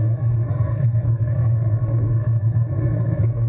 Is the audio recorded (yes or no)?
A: no